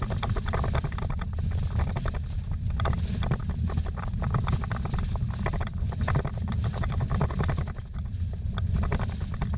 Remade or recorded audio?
recorded